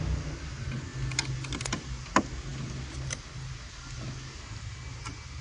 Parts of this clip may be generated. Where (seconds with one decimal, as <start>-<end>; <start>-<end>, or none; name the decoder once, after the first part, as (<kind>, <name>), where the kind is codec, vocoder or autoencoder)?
none